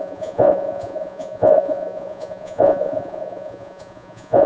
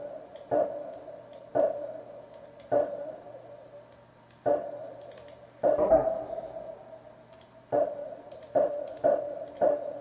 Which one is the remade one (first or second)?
first